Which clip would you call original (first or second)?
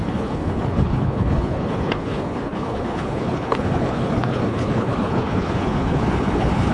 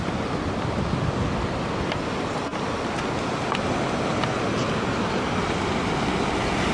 second